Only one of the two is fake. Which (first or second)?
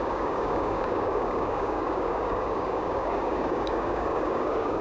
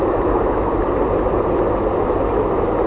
first